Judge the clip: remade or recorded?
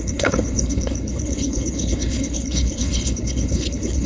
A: remade